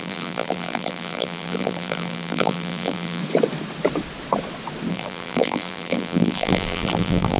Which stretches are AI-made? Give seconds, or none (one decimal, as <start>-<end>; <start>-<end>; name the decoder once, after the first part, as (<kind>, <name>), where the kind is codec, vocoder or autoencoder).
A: 0.0-3.2 (vocoder, BigVGAN v2); 4.9-7.4